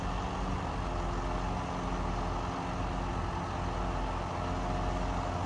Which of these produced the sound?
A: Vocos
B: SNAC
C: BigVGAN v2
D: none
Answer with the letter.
D